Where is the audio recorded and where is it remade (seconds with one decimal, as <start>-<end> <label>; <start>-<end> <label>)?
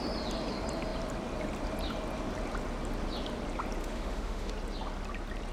0.0-3.8 recorded; 3.8-4.5 remade; 4.5-5.5 recorded